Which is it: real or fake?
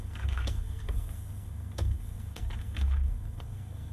fake